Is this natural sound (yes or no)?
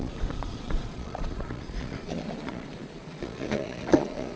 no